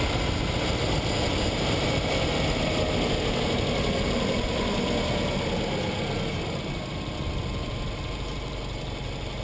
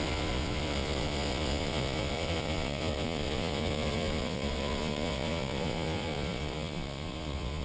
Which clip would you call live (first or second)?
first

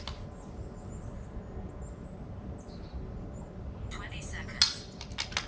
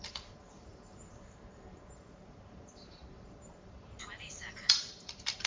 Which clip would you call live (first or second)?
first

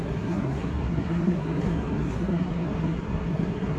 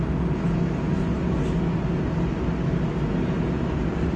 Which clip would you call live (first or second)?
second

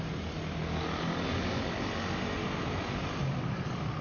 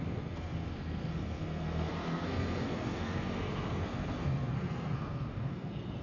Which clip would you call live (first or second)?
first